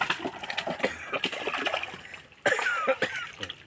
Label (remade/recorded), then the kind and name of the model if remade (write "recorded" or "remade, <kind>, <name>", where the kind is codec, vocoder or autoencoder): recorded